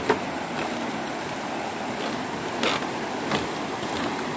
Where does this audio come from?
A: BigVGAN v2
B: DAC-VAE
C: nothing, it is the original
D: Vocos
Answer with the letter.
C